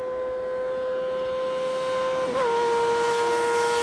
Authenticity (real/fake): real